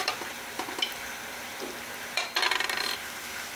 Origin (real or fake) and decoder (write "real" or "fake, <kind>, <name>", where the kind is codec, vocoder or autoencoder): fake, vocoder, BigVGAN v2